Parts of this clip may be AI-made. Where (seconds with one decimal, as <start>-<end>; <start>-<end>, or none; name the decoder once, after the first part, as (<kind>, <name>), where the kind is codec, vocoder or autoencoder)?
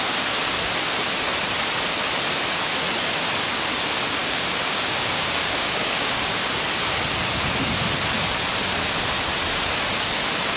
4.2-6.3 (codec, DAC)